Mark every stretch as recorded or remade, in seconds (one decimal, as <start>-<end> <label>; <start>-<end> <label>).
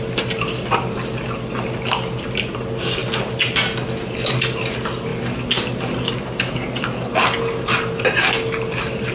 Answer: 0.0-9.1 recorded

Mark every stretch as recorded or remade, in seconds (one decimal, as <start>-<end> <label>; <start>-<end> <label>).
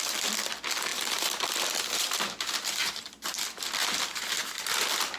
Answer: 0.0-0.9 recorded; 0.9-3.1 remade; 3.1-4.4 recorded; 4.4-5.2 remade